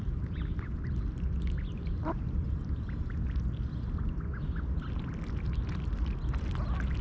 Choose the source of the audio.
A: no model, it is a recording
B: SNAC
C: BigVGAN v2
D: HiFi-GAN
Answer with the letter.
A